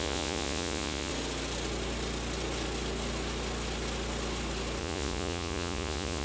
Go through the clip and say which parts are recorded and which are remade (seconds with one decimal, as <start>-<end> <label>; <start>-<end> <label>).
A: 0.0-1.1 remade; 1.1-4.8 recorded; 4.8-6.2 remade